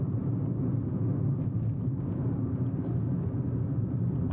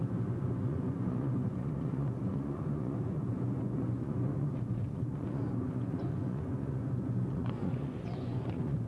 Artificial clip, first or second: second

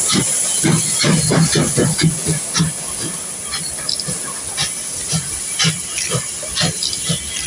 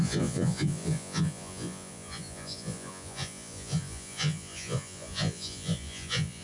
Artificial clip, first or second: second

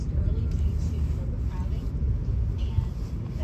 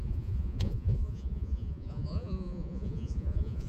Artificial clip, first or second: second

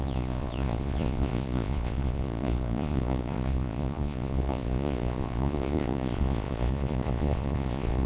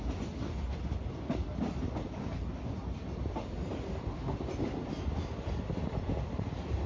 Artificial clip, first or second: first